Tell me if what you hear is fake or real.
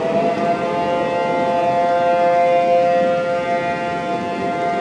real